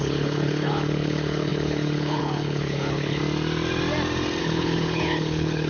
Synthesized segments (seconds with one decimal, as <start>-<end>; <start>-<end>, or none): 0.0-3.2; 4.4-5.7